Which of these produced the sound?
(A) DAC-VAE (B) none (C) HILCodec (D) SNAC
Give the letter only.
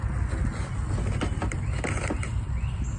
B